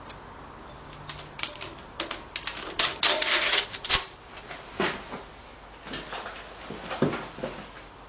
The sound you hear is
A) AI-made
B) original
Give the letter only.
B